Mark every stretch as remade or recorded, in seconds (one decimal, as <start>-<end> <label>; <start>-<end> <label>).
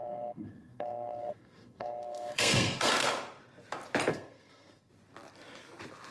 0.0-2.9 remade; 2.9-4.1 recorded; 4.1-4.9 remade; 4.9-6.1 recorded